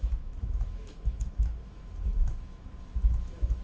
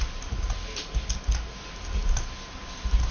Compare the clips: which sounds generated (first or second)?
first